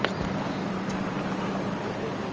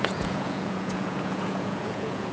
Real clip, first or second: first